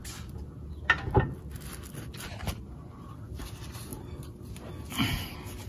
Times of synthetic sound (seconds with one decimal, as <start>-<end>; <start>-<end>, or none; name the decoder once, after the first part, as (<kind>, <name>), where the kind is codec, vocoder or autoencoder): 3.9-4.7 (vocoder, BigVGAN v2)